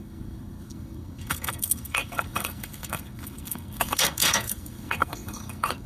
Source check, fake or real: fake